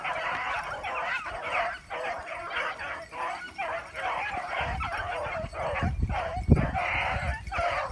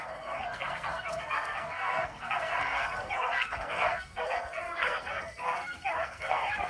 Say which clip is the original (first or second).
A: first